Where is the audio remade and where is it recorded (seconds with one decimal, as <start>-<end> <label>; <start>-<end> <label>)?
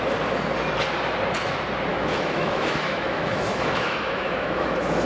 0.0-1.9 recorded; 1.9-5.1 remade